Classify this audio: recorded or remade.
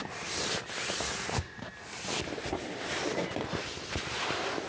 recorded